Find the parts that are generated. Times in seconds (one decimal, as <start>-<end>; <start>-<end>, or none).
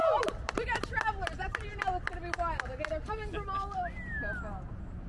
none